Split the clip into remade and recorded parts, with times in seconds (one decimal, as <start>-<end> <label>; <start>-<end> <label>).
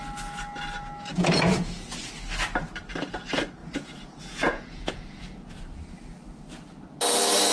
0.0-1.1 recorded; 1.1-2.1 remade; 2.1-3.6 recorded; 3.6-5.6 remade; 5.6-7.5 recorded